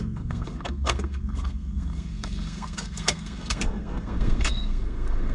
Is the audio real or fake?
fake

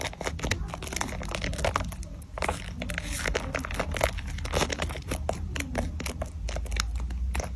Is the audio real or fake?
real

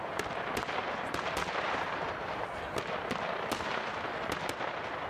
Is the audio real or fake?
real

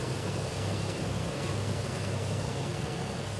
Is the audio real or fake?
fake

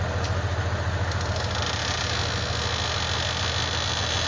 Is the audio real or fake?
real